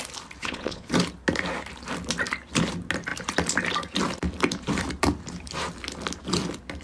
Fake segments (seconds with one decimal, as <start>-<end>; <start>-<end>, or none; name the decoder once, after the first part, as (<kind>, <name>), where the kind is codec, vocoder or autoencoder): 0.4-0.9 (vocoder, Vocos)